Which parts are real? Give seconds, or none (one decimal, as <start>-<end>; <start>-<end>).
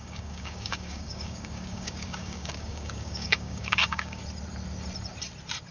4.2-5.7